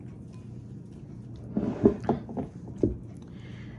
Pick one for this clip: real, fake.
real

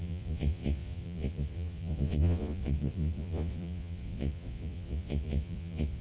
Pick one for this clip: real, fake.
fake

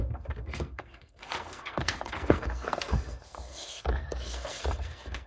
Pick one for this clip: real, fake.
fake